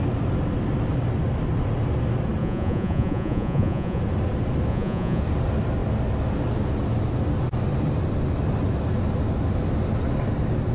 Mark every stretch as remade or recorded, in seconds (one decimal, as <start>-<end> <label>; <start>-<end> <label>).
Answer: 0.0-2.4 recorded; 2.4-4.0 remade; 4.0-4.7 recorded; 4.7-5.2 remade; 5.2-10.7 recorded